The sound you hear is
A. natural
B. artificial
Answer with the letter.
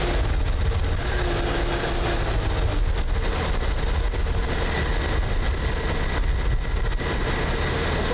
A